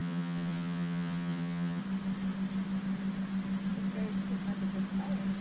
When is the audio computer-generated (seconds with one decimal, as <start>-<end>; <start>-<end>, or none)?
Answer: 0.0-1.8